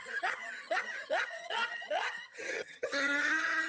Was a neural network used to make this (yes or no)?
yes